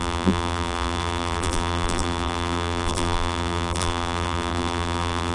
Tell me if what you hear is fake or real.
fake